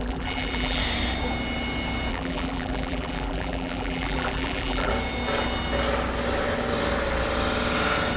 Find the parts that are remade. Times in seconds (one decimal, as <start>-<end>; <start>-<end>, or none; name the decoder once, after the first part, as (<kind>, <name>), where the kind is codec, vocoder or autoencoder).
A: 0.0-0.8 (vocoder, BigVGAN v2); 2.1-4.9